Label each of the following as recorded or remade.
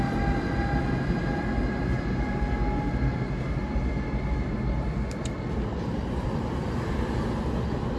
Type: recorded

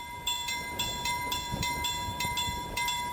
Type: remade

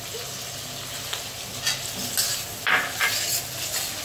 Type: recorded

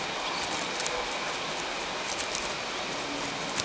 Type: recorded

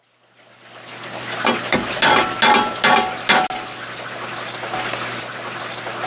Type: recorded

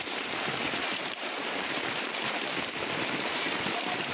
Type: remade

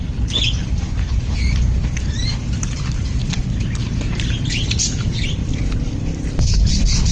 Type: remade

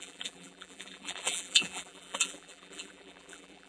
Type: remade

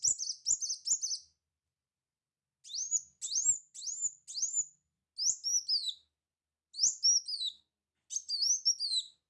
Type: recorded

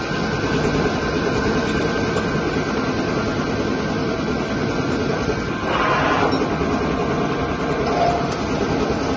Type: recorded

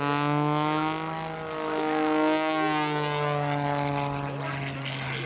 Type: recorded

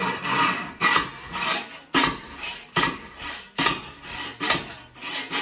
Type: remade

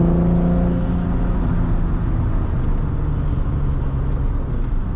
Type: recorded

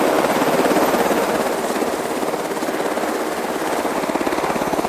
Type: recorded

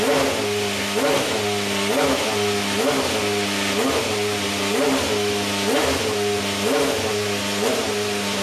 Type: recorded